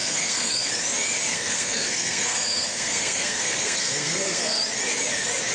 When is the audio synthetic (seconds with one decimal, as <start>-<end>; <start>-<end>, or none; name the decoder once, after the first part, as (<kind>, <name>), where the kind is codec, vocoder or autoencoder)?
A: 0.0-0.7 (codec, SNAC); 1.3-4.6